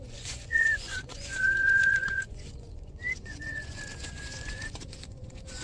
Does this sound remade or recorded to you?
remade